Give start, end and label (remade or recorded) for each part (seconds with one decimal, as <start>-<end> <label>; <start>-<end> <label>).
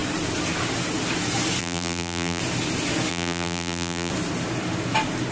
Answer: 0.0-1.6 recorded; 1.6-2.4 remade; 2.4-3.1 recorded; 3.1-4.1 remade; 4.1-5.3 recorded